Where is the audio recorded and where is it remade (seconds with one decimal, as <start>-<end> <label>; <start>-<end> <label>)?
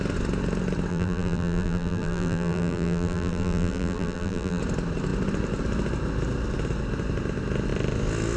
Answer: 0.0-0.9 recorded; 0.9-4.6 remade; 4.6-8.4 recorded